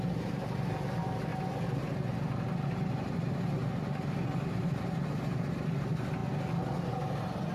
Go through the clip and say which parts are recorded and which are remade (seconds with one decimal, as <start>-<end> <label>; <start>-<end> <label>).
0.0-1.3 remade; 1.3-1.8 recorded; 1.8-3.6 remade; 3.6-4.6 recorded; 4.6-6.2 remade; 6.2-6.9 recorded; 6.9-7.5 remade